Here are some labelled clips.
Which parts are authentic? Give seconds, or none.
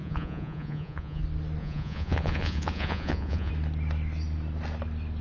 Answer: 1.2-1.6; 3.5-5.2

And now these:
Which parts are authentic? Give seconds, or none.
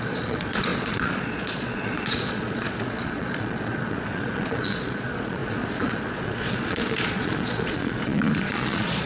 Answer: none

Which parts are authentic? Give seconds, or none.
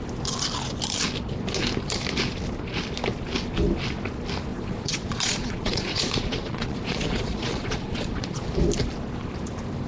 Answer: 0.0-4.5; 8.5-9.9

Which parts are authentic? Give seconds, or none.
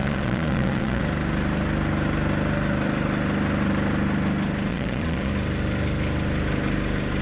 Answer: 1.0-4.7; 5.3-7.2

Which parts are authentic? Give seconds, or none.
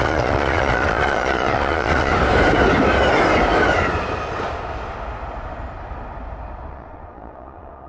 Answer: 2.1-6.7